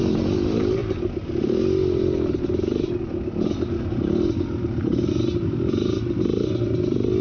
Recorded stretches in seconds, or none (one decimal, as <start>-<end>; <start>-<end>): 0.0-7.2

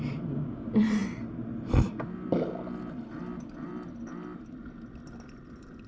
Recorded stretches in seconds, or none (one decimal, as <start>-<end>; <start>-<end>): 0.0-5.9